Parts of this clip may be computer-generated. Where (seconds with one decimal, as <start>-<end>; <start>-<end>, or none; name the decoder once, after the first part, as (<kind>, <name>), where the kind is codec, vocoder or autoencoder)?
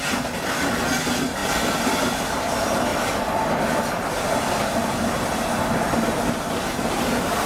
none